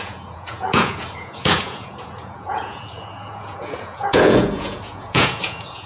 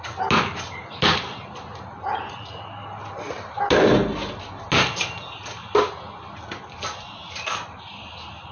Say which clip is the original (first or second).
second